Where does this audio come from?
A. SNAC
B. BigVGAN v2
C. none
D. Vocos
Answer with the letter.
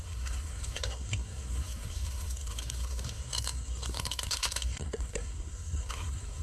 A